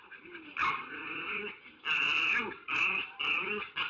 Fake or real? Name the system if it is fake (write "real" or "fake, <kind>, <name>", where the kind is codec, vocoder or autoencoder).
real